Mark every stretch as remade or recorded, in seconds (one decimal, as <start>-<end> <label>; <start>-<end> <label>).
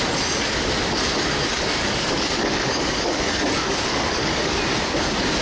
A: 0.0-1.5 recorded; 1.5-4.6 remade; 4.6-5.4 recorded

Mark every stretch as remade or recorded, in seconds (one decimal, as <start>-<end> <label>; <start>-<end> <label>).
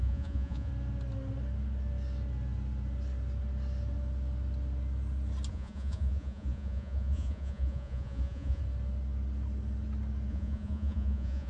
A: 0.0-0.7 remade; 0.7-5.5 recorded; 5.5-8.6 remade; 8.6-10.3 recorded; 10.3-11.5 remade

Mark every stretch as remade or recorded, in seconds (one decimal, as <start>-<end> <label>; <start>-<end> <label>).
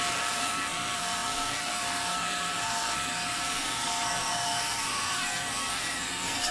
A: 0.0-6.5 remade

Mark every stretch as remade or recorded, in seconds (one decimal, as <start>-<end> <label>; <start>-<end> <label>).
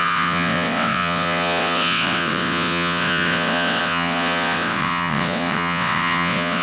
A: 0.0-6.6 remade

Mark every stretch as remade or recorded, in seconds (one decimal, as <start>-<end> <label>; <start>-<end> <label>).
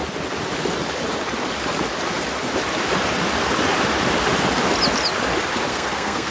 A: 0.0-5.7 recorded; 5.7-6.3 remade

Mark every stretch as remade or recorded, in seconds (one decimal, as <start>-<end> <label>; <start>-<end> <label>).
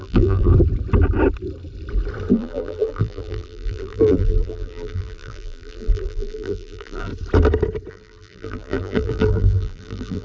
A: 0.0-0.5 remade; 0.5-2.3 recorded; 2.3-7.1 remade; 7.1-7.9 recorded; 7.9-10.2 remade